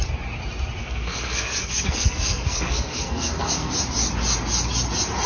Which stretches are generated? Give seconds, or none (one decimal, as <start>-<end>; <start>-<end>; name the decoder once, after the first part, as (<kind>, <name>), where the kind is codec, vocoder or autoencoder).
0.8-3.7 (codec, SNAC)